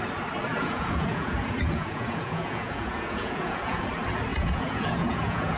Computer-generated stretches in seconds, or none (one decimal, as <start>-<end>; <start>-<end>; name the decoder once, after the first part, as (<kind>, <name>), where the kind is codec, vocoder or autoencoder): 0.5-3.9 (vocoder, Vocos); 4.3-5.6